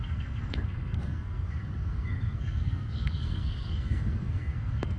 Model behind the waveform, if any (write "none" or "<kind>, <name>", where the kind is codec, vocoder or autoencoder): codec, SNAC